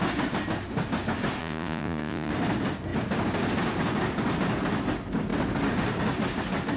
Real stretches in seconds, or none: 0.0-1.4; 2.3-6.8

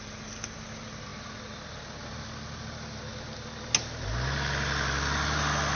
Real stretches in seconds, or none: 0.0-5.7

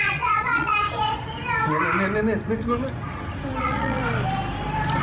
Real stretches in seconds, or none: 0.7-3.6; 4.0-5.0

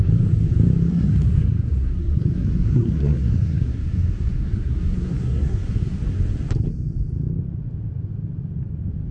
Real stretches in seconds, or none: 0.0-0.9; 6.0-9.1

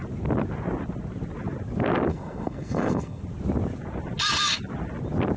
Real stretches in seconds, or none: 0.0-2.1; 3.2-5.4

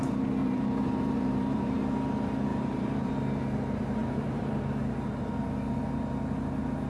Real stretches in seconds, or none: 0.0-0.4; 1.6-2.5; 3.1-4.0; 4.6-6.9